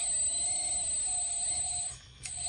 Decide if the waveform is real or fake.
fake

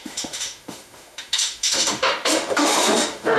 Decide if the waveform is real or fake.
fake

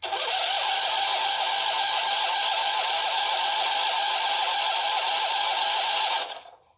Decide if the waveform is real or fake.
real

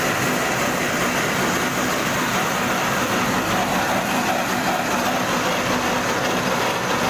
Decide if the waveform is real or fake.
real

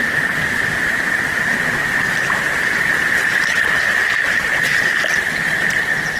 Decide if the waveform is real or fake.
real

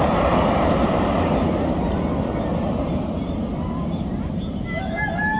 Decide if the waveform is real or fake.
real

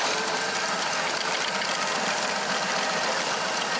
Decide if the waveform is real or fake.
real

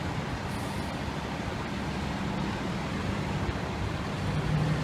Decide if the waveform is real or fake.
real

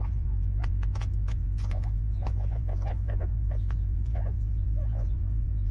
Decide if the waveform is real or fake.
fake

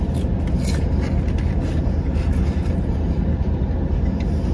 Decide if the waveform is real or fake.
real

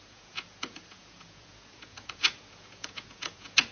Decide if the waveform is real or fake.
fake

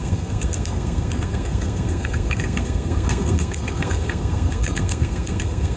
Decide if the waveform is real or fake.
fake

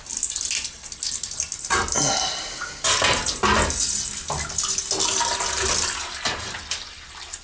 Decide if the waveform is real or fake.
real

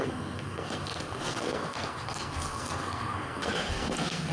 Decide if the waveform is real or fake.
fake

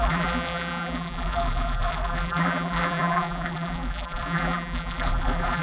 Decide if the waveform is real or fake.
fake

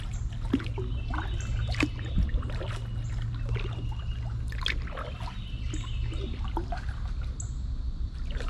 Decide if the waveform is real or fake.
real